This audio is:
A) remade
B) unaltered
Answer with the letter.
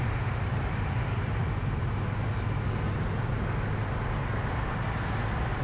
B